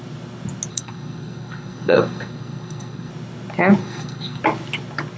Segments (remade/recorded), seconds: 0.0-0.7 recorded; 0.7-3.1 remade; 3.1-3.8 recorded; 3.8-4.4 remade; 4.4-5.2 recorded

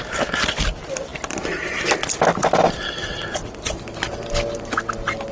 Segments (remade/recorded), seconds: 0.0-5.3 recorded

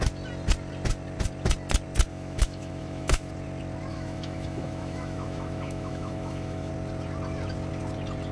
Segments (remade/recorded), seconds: 0.0-2.1 recorded; 2.1-3.3 remade; 3.3-3.9 recorded; 3.9-6.7 remade; 6.7-8.3 recorded

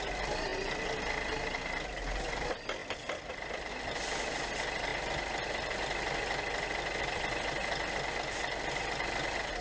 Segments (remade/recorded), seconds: 0.0-9.6 recorded

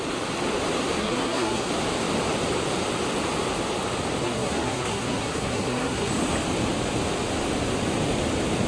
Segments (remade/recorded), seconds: 0.0-1.0 recorded; 1.0-1.7 remade; 1.7-4.2 recorded; 4.2-6.1 remade; 6.1-8.7 recorded

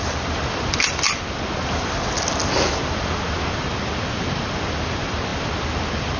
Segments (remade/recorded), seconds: 0.0-2.4 recorded; 2.4-3.2 remade; 3.2-6.2 recorded

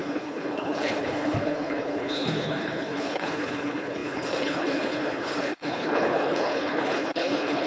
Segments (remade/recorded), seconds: 0.0-7.7 remade

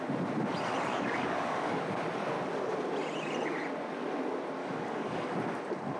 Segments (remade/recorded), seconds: 0.0-0.9 recorded; 0.9-1.8 remade; 1.8-4.6 recorded; 4.6-5.3 remade; 5.3-6.0 recorded